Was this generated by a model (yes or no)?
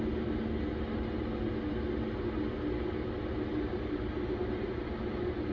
no